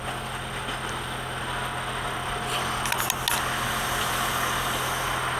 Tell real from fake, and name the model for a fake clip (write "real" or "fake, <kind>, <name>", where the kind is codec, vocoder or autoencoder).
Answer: real